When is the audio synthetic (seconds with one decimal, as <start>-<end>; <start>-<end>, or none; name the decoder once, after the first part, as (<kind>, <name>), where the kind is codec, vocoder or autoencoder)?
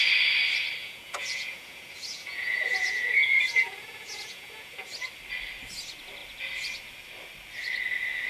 0.8-4.9 (vocoder, Vocos)